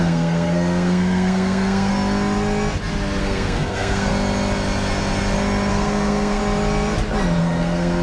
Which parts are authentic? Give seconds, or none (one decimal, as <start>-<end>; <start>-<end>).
1.9-3.2; 4.1-5.7; 6.4-7.4